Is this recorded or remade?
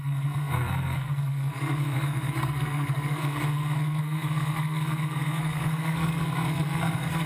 remade